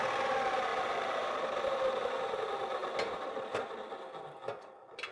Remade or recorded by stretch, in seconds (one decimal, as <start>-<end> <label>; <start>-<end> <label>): 0.0-5.1 recorded